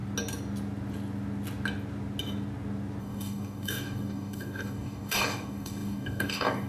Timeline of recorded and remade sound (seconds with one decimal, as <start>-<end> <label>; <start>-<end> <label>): 0.0-3.0 recorded; 3.0-6.7 remade